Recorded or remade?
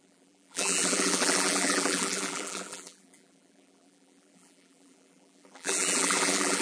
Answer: remade